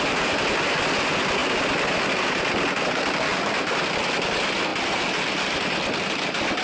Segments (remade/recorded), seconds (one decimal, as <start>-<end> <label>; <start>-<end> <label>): 0.0-3.3 recorded; 3.3-3.9 remade; 3.9-4.7 recorded; 4.7-6.6 remade